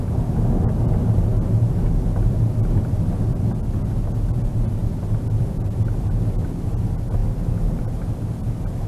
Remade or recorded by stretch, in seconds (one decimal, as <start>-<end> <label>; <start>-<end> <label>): 0.0-4.8 recorded; 4.8-5.7 remade; 5.7-8.9 recorded